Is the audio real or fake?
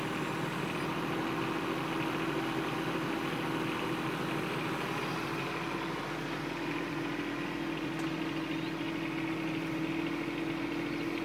real